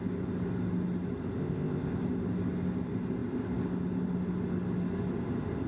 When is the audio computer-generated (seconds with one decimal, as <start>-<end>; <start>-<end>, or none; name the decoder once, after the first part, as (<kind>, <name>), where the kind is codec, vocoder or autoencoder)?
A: 1.4-2.0 (codec, ZipCodec)